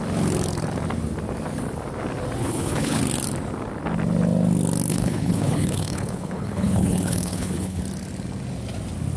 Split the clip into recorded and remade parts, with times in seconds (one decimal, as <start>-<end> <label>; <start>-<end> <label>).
0.0-2.4 recorded; 2.4-3.0 remade; 3.0-4.9 recorded; 4.9-7.8 remade; 7.8-9.2 recorded